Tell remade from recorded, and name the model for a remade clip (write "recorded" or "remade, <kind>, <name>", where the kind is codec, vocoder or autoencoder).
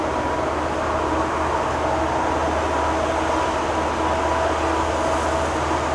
recorded